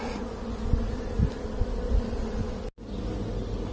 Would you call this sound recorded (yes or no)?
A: yes